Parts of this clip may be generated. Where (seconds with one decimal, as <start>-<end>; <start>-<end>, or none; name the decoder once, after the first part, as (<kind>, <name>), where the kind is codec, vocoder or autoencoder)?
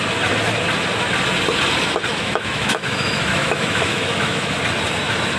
2.1-4.6 (autoencoder, DAC-VAE)